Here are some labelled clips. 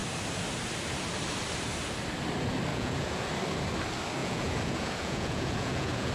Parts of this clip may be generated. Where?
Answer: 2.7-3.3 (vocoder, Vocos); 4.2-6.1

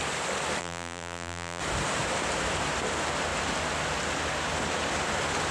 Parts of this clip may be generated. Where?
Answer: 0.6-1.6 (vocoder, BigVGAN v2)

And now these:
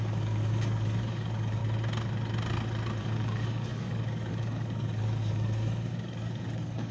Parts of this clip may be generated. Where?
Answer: 0.0-1.6 (codec, DAC); 3.0-6.9

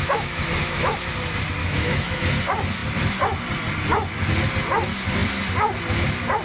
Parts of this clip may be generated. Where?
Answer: 0.0-1.1 (autoencoder, DAC-VAE); 1.6-2.2

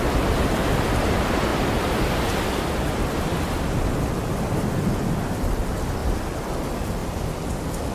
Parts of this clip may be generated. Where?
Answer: 0.0-7.9 (vocoder, BigVGAN v2)

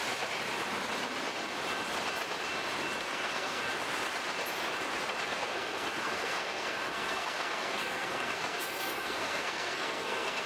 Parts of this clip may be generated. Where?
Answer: 3.0-3.7 (codec, SNAC); 5.2-10.5

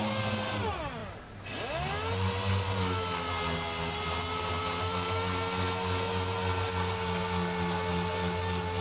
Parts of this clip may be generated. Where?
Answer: none

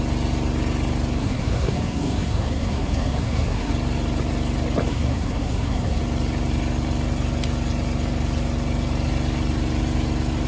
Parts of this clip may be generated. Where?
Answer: 1.2-3.7 (codec, SNAC); 4.9-6.0